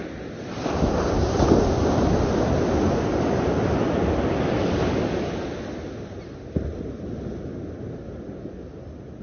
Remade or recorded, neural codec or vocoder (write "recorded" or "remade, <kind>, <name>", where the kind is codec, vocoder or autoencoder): recorded